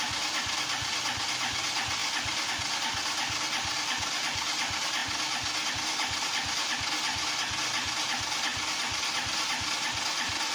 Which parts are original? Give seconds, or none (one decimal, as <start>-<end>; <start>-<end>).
0.0-10.5